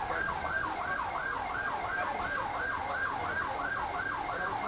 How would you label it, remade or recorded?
recorded